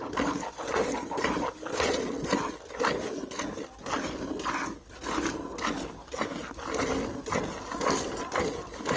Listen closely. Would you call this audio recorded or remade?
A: recorded